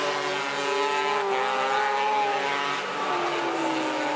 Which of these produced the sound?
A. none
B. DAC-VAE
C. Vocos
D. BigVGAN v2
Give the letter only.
A